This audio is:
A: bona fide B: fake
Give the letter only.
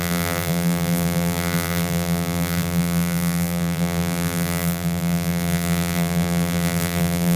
B